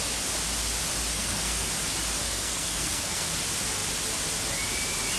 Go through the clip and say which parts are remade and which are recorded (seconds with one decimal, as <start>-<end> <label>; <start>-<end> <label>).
0.0-1.1 recorded; 1.1-1.7 remade; 1.7-2.2 recorded; 2.2-3.3 remade; 3.3-5.2 recorded